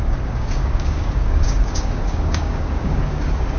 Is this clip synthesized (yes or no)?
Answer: yes